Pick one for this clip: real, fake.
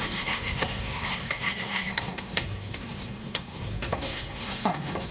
fake